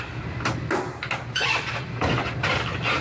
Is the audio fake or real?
real